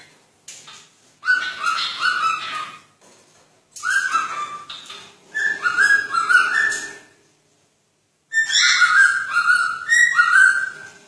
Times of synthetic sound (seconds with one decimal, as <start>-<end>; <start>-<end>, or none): none